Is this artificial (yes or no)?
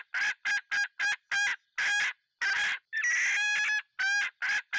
no